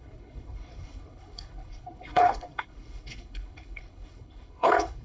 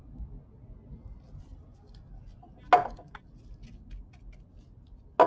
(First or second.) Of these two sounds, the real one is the second